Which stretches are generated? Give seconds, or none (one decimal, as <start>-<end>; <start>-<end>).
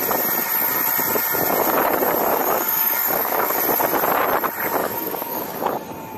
2.3-3.6; 4.8-5.7